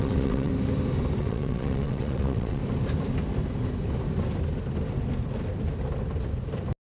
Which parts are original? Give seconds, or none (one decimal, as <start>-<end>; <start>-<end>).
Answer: 0.5-1.2; 2.6-6.9